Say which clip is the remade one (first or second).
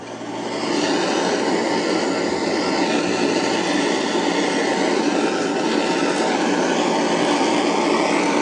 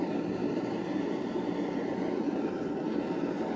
second